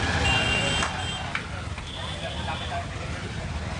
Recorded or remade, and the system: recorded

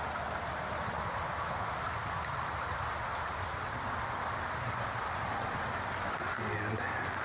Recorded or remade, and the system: recorded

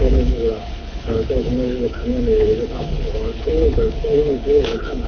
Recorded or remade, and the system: remade, codec, HILCodec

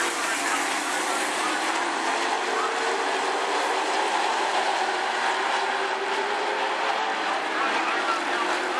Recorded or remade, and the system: recorded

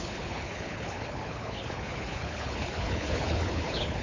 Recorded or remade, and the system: remade, codec, HILCodec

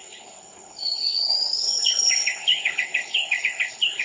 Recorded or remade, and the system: remade, codec, HILCodec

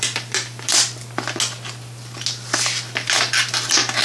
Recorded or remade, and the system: recorded